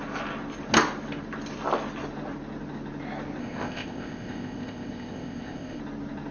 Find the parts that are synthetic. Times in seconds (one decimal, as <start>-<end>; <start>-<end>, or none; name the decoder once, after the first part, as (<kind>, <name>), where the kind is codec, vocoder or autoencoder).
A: 3.4-5.8 (codec, ZipCodec)